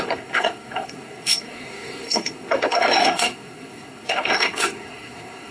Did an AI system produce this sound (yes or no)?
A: yes